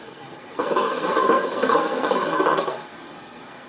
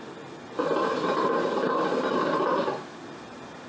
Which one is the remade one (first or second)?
first